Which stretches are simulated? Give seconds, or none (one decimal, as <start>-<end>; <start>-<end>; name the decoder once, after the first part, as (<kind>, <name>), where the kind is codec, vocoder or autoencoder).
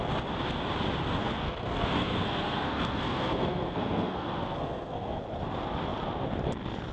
1.2-5.2 (codec, SNAC)